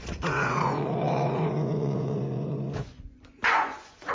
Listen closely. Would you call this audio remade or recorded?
remade